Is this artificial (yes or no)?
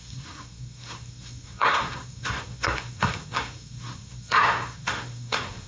yes